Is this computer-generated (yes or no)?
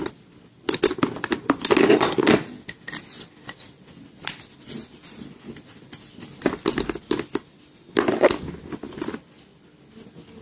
no